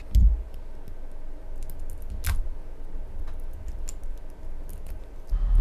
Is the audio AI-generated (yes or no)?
no